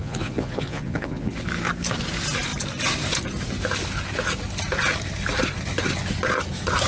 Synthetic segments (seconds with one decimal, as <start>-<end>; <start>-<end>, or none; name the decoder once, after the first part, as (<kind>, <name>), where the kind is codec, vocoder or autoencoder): 0.0-1.3 (vocoder, Vocos)